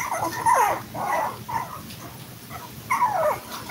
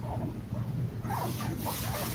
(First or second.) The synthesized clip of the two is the second